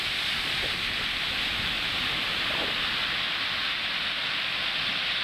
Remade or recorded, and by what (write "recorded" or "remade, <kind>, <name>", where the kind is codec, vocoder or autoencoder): recorded